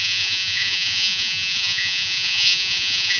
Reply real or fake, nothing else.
fake